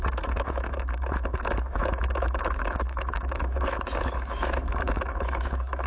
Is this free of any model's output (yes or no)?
no